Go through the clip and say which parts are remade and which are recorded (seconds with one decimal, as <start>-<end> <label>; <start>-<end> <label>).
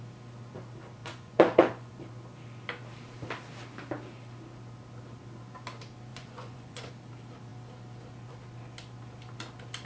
0.0-1.0 recorded; 1.0-2.0 remade; 2.0-6.1 recorded; 6.1-6.9 remade; 6.9-9.9 recorded